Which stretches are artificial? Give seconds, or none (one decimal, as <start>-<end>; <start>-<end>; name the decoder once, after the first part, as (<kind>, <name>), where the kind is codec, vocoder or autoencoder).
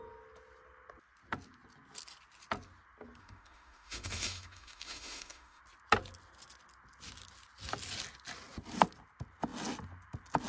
3.2-5.6 (autoencoder, DAC-VAE)